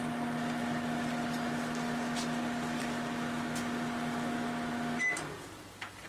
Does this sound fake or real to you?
real